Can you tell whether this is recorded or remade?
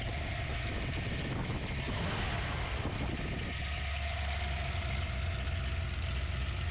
recorded